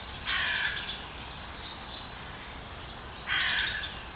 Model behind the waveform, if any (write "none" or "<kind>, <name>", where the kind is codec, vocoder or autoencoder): none